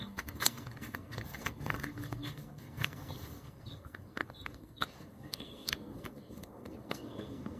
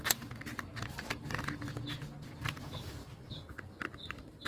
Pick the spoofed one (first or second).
first